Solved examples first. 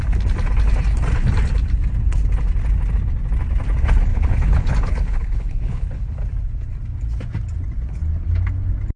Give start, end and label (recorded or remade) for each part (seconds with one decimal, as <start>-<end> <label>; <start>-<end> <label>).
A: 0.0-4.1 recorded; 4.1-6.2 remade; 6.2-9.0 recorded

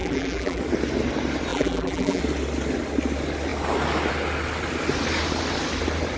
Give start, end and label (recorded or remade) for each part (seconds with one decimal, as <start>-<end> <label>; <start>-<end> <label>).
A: 0.0-0.6 remade; 0.6-1.5 recorded; 1.5-2.2 remade; 2.2-6.2 recorded

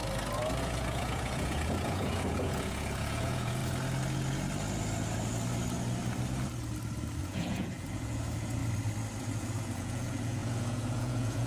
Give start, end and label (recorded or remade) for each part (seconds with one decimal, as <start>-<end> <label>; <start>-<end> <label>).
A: 0.0-0.6 recorded; 0.6-3.6 remade; 3.6-7.2 recorded; 7.2-8.6 remade; 8.6-9.2 recorded; 9.2-11.5 remade

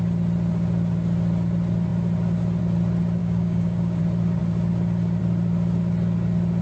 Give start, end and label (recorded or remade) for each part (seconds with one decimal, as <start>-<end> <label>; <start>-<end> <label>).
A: 0.0-3.2 recorded; 3.2-4.0 remade; 4.0-6.6 recorded

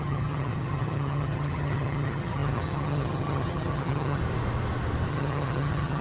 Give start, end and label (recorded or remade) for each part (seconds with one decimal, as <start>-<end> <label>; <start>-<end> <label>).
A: 0.0-4.2 remade; 4.2-5.1 recorded; 5.1-6.0 remade

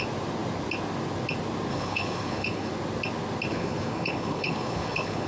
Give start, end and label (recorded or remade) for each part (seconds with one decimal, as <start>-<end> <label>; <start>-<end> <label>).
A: 0.0-1.7 recorded; 1.7-2.7 remade; 2.7-3.5 recorded; 3.5-5.3 remade

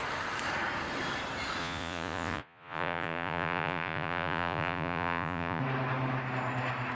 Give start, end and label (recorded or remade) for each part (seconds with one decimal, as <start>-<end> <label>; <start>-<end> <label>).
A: 0.0-1.6 recorded; 1.6-5.6 remade; 5.6-6.9 recorded